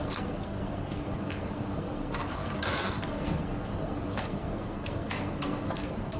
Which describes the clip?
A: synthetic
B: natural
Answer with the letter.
A